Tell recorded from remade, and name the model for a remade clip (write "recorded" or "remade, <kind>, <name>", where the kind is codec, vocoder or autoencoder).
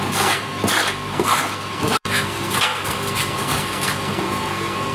remade, codec, SNAC